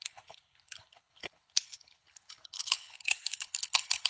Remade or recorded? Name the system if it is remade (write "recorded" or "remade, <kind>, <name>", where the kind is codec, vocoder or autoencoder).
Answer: remade, codec, HILCodec